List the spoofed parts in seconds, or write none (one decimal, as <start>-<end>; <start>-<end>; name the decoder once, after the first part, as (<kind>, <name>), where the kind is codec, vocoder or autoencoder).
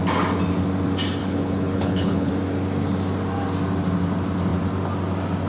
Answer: 1.2-2.3 (codec, HILCodec)